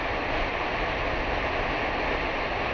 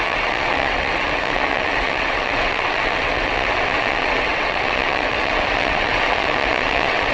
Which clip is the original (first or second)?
first